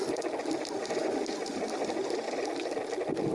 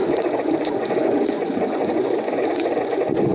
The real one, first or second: first